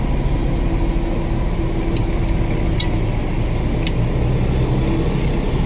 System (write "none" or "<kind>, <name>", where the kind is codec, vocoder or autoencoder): none